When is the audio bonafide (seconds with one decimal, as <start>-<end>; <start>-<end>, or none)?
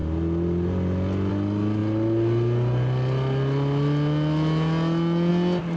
0.0-5.8